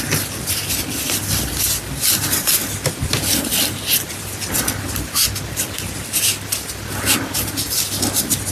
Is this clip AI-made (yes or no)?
no